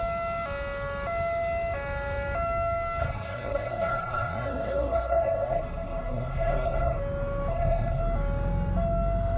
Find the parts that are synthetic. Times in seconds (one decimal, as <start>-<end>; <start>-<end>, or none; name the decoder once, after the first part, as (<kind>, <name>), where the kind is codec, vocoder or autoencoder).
3.0-7.0 (codec, SNAC); 7.5-8.0